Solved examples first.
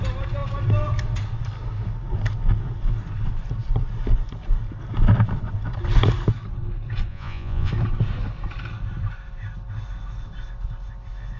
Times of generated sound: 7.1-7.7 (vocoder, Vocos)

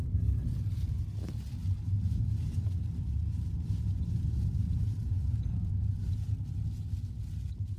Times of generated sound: 1.6-6.3 (vocoder, BigVGAN v2)

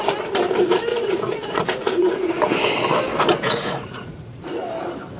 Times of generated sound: 0.9-2.4 (vocoder, Vocos); 3.1-4.5

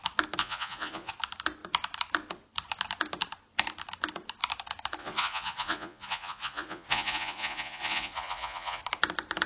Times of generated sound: 0.4-1.1 (vocoder, Vocos); 5.0-8.8